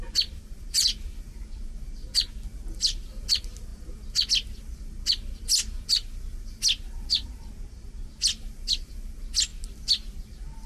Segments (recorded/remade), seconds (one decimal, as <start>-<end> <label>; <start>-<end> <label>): 0.0-10.7 recorded